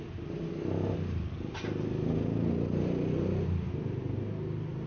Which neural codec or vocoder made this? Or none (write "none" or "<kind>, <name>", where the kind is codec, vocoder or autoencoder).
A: none